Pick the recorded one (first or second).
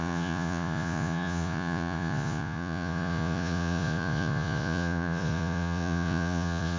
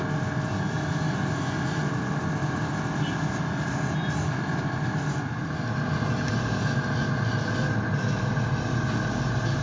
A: second